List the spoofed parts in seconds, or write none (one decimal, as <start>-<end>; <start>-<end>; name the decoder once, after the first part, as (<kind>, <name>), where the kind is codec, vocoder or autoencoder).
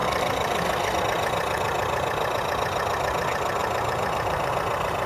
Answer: 3.6-4.5 (vocoder, BigVGAN v2)